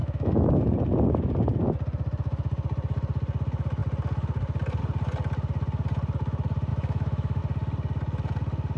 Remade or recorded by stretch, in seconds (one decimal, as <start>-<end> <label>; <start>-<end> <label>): 0.0-0.6 remade; 0.6-6.7 recorded; 6.7-7.4 remade; 7.4-8.8 recorded